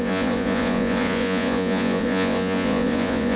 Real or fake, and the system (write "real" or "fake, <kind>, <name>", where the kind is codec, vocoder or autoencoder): fake, vocoder, Vocos